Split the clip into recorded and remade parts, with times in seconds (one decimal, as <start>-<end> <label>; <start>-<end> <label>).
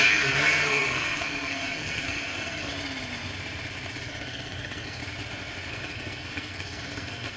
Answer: 0.0-2.7 remade; 2.7-4.2 recorded; 4.2-5.0 remade; 5.0-5.7 recorded; 5.7-7.4 remade